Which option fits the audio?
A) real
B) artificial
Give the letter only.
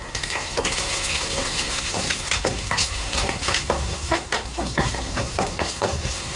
B